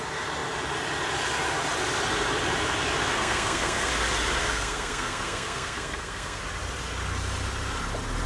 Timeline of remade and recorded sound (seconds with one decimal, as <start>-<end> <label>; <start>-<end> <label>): 0.0-3.0 recorded; 3.0-3.9 remade; 3.9-4.4 recorded; 4.4-6.4 remade; 6.4-8.3 recorded